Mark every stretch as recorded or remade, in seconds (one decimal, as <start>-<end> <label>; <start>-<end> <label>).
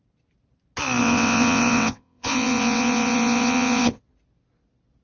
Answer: 0.0-1.0 recorded; 1.0-4.0 remade; 4.0-5.0 recorded